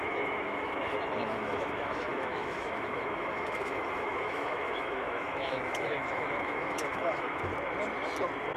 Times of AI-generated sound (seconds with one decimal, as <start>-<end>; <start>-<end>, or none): 0.0-7.5